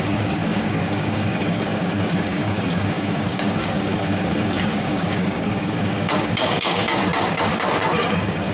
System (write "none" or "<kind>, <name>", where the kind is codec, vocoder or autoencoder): codec, DAC